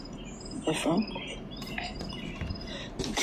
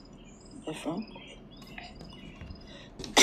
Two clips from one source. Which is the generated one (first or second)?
first